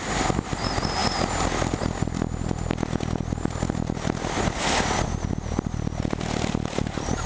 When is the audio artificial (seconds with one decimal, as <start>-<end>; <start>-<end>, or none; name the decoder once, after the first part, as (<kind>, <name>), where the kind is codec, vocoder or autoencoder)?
none